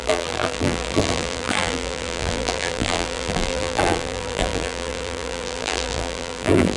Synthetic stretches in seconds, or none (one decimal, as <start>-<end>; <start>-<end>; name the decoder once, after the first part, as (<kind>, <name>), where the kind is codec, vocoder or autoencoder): 0.0-6.8 (vocoder, BigVGAN v2)